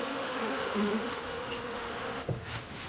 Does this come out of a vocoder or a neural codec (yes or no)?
yes